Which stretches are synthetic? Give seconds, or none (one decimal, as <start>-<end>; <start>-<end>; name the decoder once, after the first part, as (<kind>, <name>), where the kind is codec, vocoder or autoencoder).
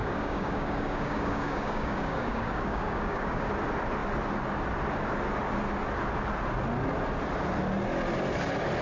0.0-3.5 (codec, DAC)